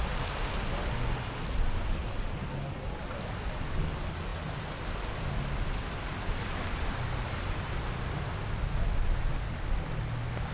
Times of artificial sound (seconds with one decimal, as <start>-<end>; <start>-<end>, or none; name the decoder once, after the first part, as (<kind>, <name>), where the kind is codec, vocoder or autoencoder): none